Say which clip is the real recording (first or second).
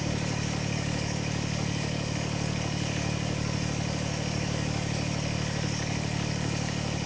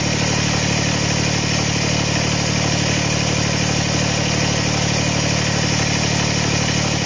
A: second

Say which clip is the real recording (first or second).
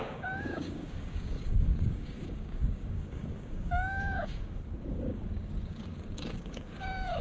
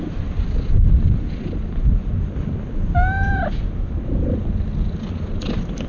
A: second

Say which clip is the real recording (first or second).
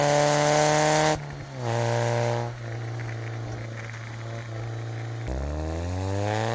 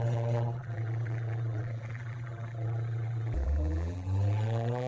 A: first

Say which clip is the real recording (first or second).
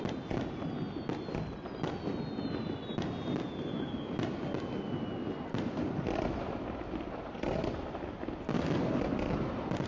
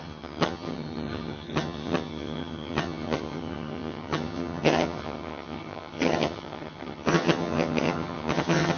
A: first